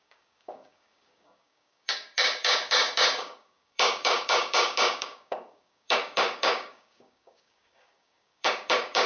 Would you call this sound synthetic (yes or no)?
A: yes